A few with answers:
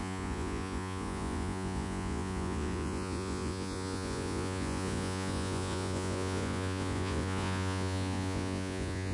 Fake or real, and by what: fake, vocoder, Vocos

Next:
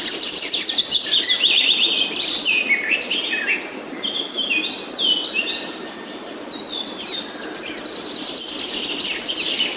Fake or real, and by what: real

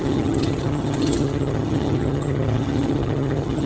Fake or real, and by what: fake, vocoder, HiFi-GAN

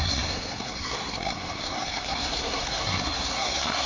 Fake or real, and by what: fake, codec, SNAC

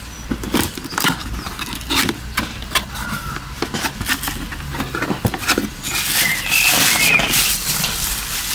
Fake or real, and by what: real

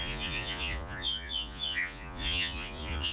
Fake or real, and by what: fake, vocoder, Vocos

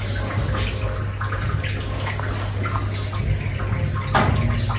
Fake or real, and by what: real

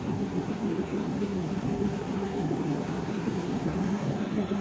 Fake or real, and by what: fake, codec, SNAC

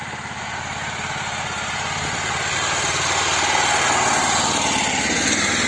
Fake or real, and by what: real